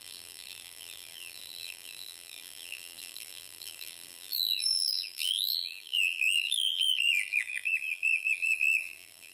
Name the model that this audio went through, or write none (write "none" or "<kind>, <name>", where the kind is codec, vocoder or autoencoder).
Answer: vocoder, BigVGAN v2